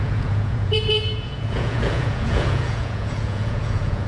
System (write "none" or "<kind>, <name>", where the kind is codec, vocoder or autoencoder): vocoder, Vocos